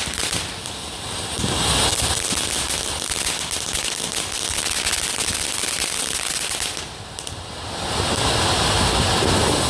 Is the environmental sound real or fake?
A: real